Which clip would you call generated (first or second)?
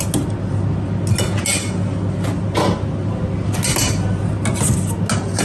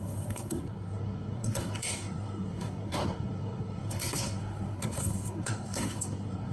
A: second